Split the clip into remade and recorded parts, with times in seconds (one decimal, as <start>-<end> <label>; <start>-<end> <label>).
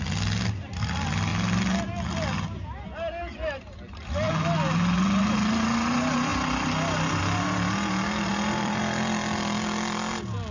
0.0-8.3 recorded; 8.3-8.8 remade; 8.8-10.5 recorded